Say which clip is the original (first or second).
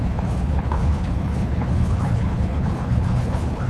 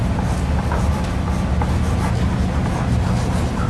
second